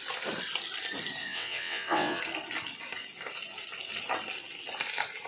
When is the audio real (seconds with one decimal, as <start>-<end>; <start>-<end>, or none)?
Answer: 0.0-1.2; 2.2-5.3